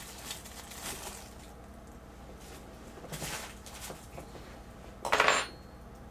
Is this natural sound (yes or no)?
yes